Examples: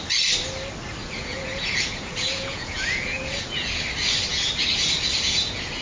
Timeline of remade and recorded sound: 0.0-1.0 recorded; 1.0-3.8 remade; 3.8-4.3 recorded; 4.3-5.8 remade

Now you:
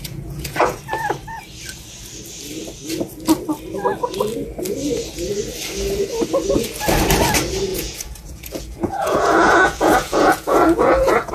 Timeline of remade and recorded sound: 0.0-0.8 remade; 0.8-7.7 recorded; 7.7-11.3 remade

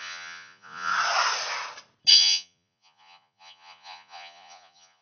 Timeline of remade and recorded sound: 0.0-0.9 remade; 0.9-2.1 recorded; 2.1-5.0 remade

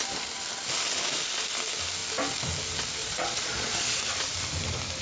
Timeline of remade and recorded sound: 0.0-3.0 recorded; 3.0-4.0 remade; 4.0-5.0 recorded

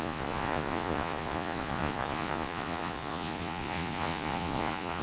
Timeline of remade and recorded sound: 0.0-5.0 remade

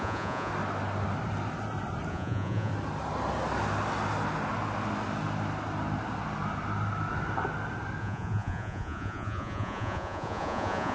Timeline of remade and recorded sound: 0.0-0.5 remade; 0.5-2.1 recorded; 2.1-2.7 remade; 2.7-8.0 recorded; 8.0-10.9 remade